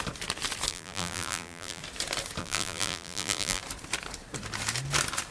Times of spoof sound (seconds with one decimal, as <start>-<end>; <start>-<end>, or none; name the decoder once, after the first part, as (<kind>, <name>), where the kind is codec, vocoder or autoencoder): 0.7-1.8 (vocoder, BigVGAN v2); 2.4-3.6